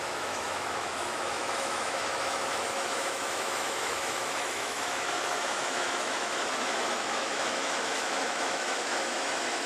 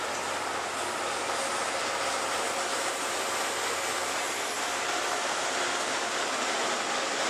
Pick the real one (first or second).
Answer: second